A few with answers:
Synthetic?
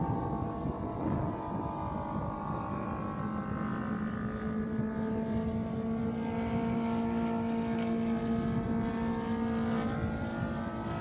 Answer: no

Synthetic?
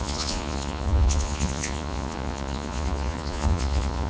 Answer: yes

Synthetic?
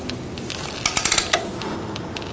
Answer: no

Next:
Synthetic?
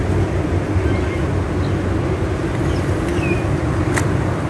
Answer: no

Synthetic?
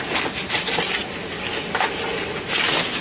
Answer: no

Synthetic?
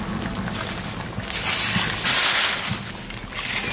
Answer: no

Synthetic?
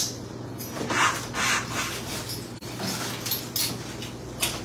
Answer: no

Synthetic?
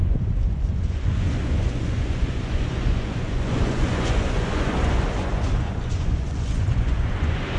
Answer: yes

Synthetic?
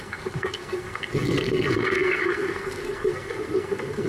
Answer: yes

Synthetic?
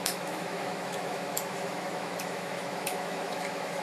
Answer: yes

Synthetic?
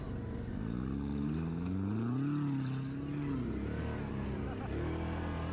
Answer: no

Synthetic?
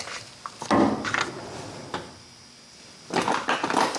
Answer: no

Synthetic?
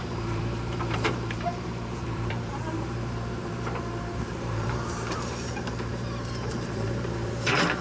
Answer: yes